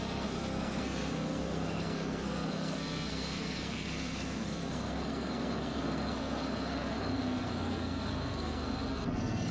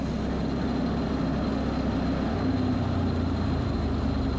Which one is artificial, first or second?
first